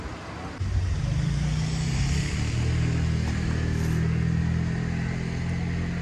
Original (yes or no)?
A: yes